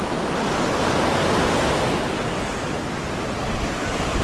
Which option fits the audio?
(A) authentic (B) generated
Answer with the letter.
A